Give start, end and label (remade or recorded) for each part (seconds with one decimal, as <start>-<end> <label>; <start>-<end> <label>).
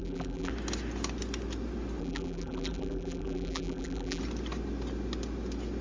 0.0-0.5 remade; 0.5-2.0 recorded; 2.0-4.2 remade; 4.2-5.8 recorded